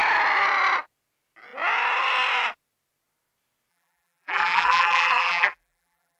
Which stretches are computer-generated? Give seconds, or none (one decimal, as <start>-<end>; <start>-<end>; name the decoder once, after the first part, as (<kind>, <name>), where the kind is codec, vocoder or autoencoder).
3.7-6.2 (vocoder, BigVGAN v2)